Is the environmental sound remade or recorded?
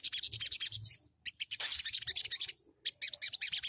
recorded